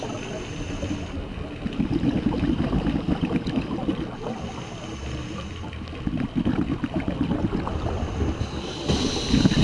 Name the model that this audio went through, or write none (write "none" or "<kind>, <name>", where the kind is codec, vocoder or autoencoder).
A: none